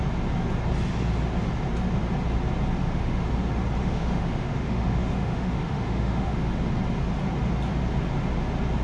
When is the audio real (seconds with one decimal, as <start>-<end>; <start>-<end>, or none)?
0.0-2.8; 3.3-3.8; 6.5-8.8